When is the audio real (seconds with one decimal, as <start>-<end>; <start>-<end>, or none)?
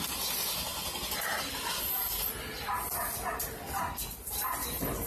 0.0-5.1